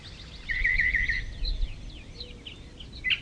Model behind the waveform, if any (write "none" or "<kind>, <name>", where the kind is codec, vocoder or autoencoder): none